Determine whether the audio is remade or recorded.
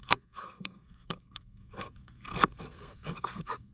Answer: remade